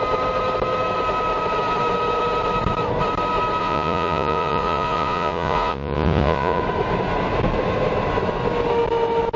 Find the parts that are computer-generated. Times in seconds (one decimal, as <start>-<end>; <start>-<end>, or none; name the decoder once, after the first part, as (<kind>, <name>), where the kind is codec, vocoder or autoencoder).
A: 3.6-6.6 (vocoder, Vocos)

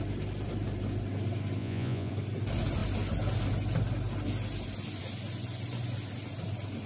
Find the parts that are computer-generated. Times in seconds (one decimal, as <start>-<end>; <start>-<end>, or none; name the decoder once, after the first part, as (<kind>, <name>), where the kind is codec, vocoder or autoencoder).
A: 1.6-2.1 (vocoder, Vocos)

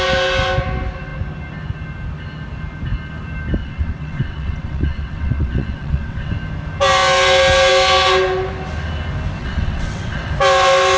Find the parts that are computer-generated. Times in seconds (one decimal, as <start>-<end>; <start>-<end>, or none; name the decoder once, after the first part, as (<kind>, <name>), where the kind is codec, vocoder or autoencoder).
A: 3.6-6.3 (vocoder, WaveNeXt); 9.4-10.3

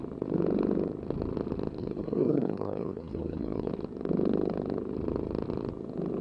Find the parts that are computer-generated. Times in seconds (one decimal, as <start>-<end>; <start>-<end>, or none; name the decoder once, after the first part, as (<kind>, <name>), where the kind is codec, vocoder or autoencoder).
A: 1.8-3.7 (codec, SNAC)

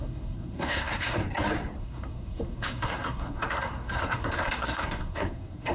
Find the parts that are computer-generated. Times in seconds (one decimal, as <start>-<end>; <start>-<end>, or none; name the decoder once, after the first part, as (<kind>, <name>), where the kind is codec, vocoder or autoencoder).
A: 0.0-1.2 (codec, SNAC); 1.8-5.7